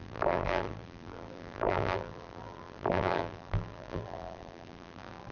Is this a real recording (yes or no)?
no